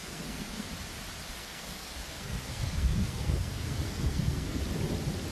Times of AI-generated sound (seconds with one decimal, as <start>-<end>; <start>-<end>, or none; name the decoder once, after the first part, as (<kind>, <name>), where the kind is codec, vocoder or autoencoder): 0.0-0.7 (codec, SNAC); 1.4-4.6